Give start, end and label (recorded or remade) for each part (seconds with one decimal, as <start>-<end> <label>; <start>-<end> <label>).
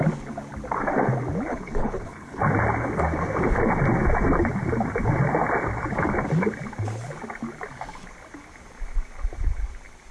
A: 0.0-1.5 recorded; 1.5-2.4 remade; 2.4-10.1 recorded